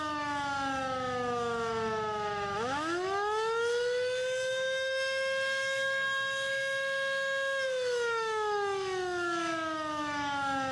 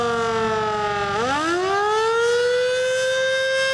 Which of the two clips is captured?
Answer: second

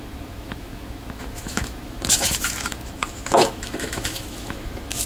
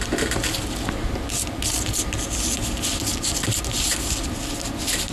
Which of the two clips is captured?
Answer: second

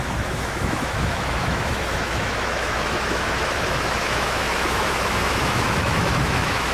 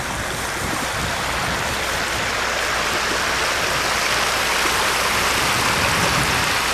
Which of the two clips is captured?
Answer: second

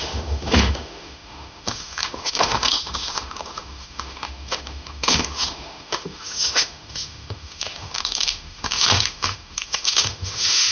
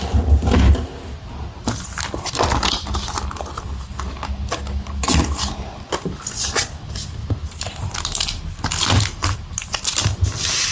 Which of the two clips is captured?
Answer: second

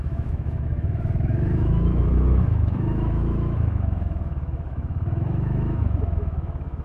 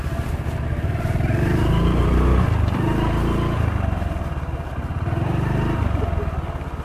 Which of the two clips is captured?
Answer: second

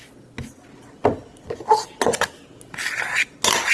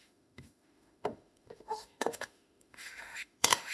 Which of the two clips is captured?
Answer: first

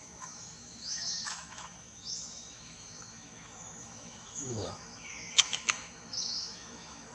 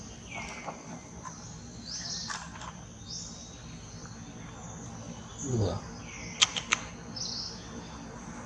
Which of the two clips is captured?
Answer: second